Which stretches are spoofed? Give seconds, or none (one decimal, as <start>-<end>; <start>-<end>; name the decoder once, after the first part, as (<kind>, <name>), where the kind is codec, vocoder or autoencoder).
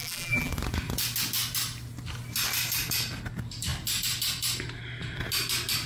0.0-0.5 (vocoder, BigVGAN v2)